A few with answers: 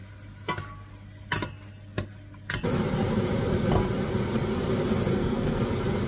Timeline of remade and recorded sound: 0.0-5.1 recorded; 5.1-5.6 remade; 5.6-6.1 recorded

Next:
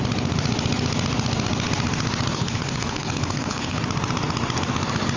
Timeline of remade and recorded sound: 0.0-2.3 recorded; 2.3-3.8 remade; 3.8-5.2 recorded

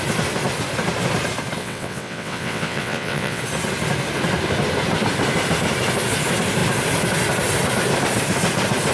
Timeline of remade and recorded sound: 0.0-1.6 recorded; 1.6-3.4 remade; 3.4-8.9 recorded

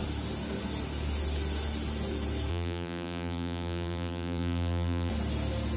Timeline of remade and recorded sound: 0.0-2.5 recorded; 2.5-5.1 remade; 5.1-5.8 recorded

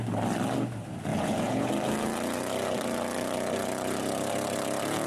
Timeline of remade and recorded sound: 0.0-1.1 recorded; 1.1-1.7 remade; 1.7-5.1 recorded

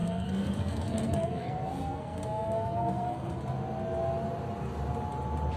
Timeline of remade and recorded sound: 0.0-3.4 remade; 3.4-5.6 recorded

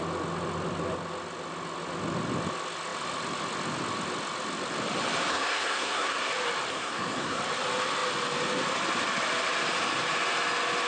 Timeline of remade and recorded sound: 0.0-5.3 recorded; 5.3-6.3 remade; 6.3-6.7 recorded; 6.7-7.4 remade; 7.4-10.9 recorded

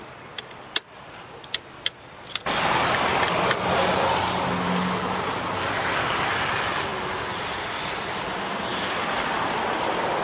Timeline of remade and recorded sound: 0.0-10.2 recorded